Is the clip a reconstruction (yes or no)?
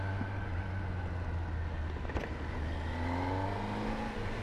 no